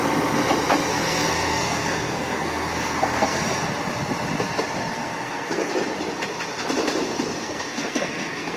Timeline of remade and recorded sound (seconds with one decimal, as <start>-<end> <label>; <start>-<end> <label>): 0.0-0.9 recorded; 0.9-3.4 remade; 3.4-4.9 recorded; 4.9-5.7 remade; 5.7-7.4 recorded; 7.4-8.6 remade